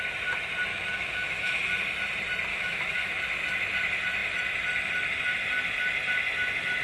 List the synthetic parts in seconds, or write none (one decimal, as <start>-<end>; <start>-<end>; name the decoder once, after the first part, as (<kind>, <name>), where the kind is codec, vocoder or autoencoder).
0.7-1.6 (autoencoder, DAC-VAE); 2.5-3.2